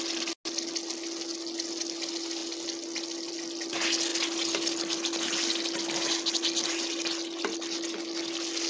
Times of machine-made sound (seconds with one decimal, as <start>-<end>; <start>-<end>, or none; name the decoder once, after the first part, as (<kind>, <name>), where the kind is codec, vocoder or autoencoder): none